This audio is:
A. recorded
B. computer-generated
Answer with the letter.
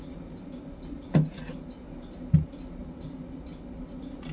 A